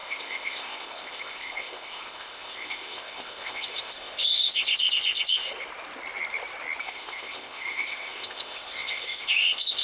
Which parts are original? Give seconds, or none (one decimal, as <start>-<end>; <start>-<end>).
5.5-6.8